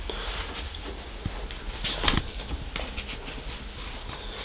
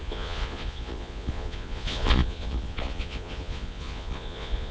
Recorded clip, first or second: first